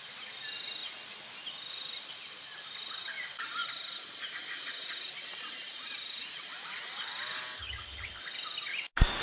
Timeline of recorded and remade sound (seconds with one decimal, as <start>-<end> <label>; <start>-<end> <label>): 0.0-7.6 recorded; 7.6-8.2 remade; 8.2-9.2 recorded

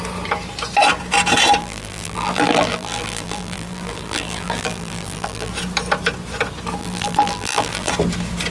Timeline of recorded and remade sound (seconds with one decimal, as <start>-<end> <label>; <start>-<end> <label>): 0.0-1.6 recorded; 1.6-5.5 remade; 5.5-6.8 recorded; 6.8-7.9 remade; 7.9-8.5 recorded